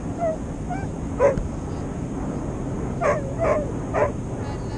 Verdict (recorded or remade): recorded